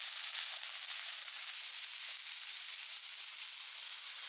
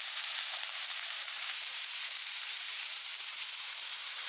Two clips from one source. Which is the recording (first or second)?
first